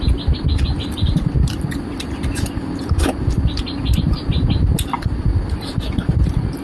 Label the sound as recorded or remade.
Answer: recorded